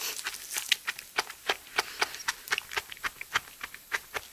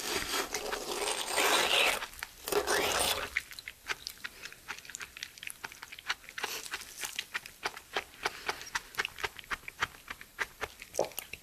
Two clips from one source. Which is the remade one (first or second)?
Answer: second